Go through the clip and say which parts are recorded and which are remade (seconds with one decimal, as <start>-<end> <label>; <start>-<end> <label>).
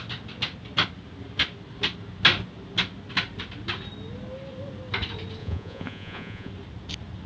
0.0-5.4 recorded; 5.4-6.5 remade; 6.5-7.3 recorded